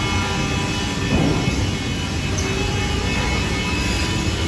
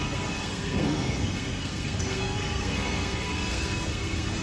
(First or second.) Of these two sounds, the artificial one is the second